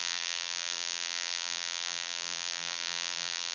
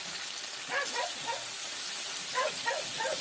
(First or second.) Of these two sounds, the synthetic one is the first